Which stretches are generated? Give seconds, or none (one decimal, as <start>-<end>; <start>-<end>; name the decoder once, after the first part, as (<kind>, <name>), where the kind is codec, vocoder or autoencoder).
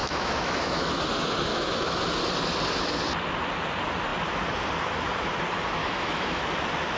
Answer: 0.0-1.0 (autoencoder, DAC-VAE); 1.5-2.0; 5.8-6.4